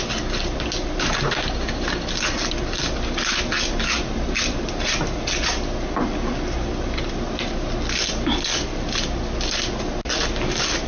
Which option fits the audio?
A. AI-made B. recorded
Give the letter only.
B